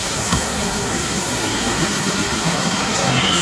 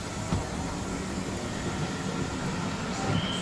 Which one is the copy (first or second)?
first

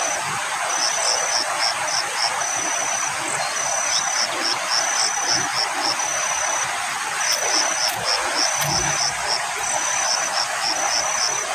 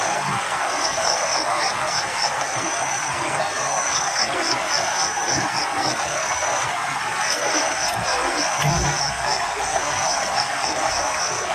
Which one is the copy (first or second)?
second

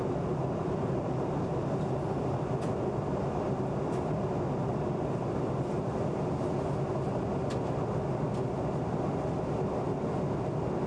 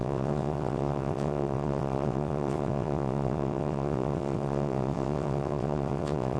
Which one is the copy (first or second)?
second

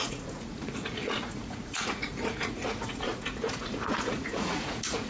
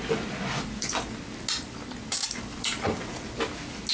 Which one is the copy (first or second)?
first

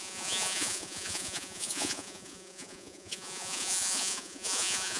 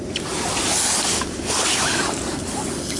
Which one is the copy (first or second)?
first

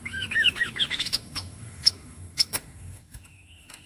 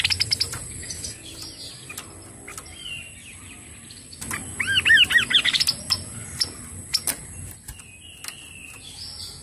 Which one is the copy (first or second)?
first